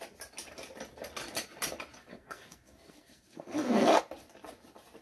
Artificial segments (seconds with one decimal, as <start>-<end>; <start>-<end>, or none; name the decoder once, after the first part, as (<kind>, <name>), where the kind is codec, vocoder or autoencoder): 2.1-4.0 (codec, SNAC)